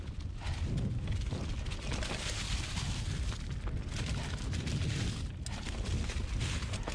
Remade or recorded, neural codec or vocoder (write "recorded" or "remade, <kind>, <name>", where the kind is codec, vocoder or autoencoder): recorded